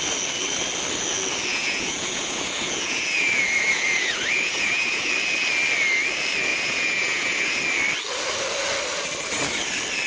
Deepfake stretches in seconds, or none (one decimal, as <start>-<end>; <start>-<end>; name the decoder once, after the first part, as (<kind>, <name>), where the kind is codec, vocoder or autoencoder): 1.5-5.1 (vocoder, Vocos); 6.5-7.6